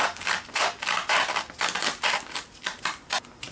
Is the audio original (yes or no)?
yes